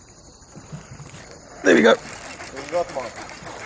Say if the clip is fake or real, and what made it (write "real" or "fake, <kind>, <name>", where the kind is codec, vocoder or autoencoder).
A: real